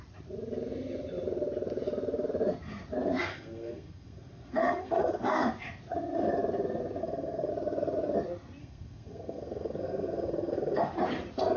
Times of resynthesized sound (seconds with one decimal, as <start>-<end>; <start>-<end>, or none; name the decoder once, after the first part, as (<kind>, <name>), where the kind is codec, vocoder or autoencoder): 3.3-5.4 (codec, SNAC); 7.0-7.5; 8.6-10.8